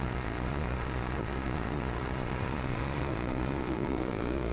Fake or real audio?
fake